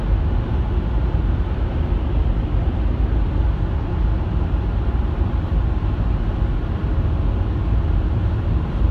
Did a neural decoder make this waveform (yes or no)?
no